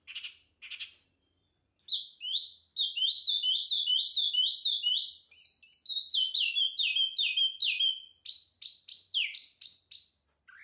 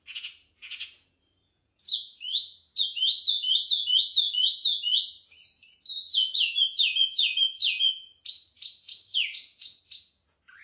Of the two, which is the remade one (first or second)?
second